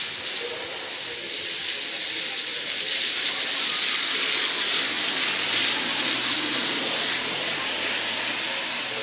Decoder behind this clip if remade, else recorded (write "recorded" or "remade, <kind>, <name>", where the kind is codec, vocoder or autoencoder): recorded